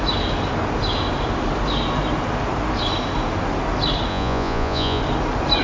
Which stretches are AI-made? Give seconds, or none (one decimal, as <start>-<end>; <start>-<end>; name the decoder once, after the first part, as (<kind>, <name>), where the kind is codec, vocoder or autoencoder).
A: 4.1-5.0 (vocoder, Vocos)